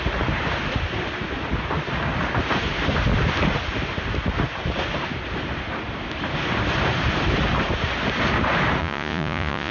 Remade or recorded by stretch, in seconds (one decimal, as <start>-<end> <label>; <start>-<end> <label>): 0.0-8.8 recorded; 8.8-9.7 remade